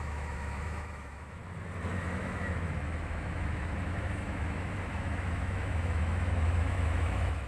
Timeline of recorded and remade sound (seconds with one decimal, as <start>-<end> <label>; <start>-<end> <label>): 0.0-1.4 remade; 1.4-1.9 recorded; 1.9-7.5 remade